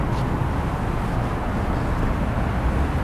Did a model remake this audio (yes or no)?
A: no